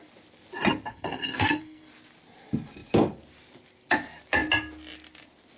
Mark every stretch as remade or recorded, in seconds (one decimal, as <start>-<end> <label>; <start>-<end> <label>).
0.0-0.9 recorded; 0.9-1.9 remade; 1.9-5.6 recorded